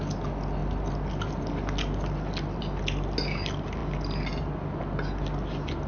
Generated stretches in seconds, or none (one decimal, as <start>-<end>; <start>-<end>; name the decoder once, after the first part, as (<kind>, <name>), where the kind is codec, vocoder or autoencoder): none